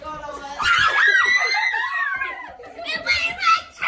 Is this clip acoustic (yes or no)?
no